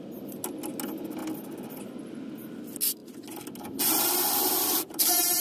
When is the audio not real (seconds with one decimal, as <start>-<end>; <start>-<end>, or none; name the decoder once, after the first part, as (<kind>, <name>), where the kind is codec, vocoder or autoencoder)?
none